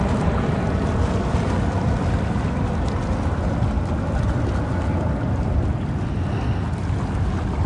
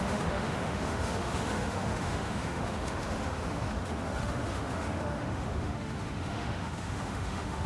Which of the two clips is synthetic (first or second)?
second